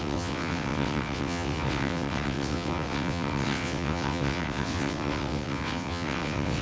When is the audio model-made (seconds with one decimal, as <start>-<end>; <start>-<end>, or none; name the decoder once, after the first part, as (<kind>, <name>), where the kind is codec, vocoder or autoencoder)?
0.0-6.6 (vocoder, WaveNeXt)